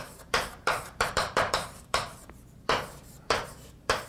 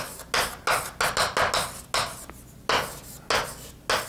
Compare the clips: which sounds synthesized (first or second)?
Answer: first